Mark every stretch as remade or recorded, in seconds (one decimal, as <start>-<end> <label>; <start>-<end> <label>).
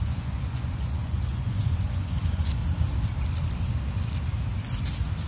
0.0-2.6 remade; 2.6-5.3 recorded